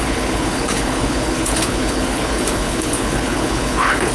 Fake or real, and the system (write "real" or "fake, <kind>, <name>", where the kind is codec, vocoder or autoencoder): fake, codec, HILCodec